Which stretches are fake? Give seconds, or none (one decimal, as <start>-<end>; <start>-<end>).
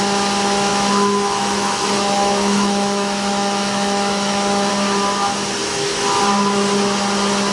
0.7-4.7; 5.6-6.2